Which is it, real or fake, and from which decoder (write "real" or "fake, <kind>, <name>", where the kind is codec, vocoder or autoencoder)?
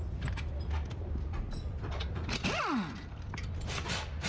real